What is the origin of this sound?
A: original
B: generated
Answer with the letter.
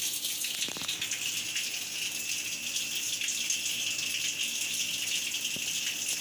A